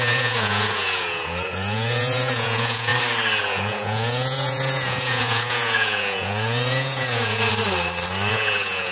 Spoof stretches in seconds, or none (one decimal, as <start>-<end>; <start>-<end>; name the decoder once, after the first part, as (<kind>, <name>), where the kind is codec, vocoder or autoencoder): 0.0-2.9 (vocoder, Vocos); 3.4-7.5; 8.3-8.9